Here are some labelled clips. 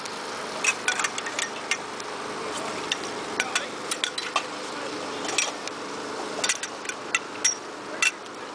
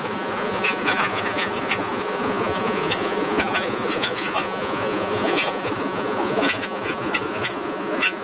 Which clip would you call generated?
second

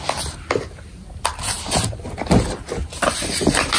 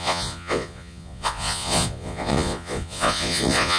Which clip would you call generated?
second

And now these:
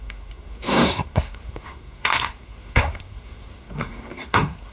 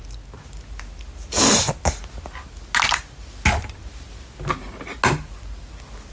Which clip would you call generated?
first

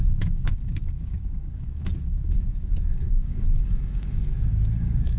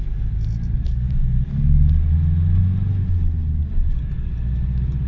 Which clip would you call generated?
first